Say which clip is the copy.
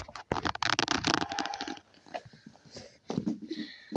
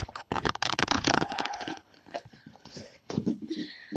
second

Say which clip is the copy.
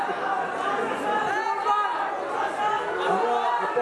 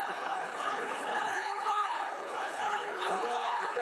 second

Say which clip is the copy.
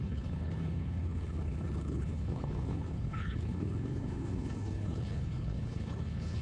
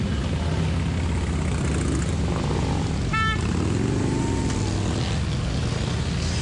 first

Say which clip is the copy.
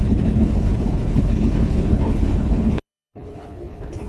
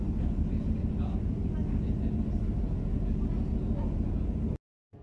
first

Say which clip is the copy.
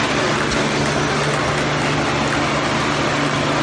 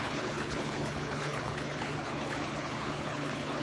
second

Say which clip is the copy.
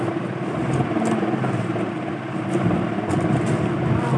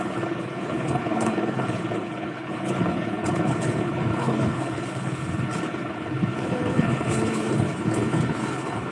second